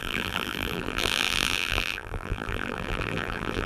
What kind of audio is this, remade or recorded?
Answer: remade